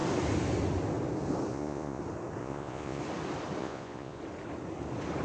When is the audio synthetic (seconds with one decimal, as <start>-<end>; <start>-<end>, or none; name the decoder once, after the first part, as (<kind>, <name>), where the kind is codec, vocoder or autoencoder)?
1.5-2.0 (vocoder, Vocos); 2.4-3.0; 3.6-4.2